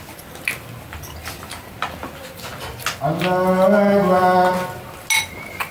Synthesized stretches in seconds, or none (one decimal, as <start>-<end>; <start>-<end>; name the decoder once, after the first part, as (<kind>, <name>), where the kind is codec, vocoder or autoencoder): none